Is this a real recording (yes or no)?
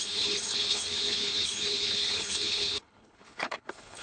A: no